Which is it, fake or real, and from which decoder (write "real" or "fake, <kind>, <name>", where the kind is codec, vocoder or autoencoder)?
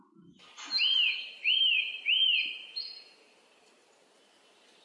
fake, vocoder, BigVGAN v2